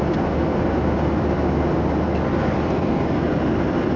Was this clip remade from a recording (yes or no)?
no